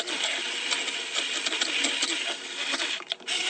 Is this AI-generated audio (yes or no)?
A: no